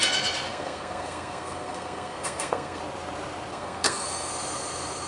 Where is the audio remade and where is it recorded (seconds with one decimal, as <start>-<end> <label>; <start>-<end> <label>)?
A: 0.0-0.5 recorded; 0.5-2.8 remade; 2.8-3.5 recorded; 3.5-4.3 remade; 4.3-5.1 recorded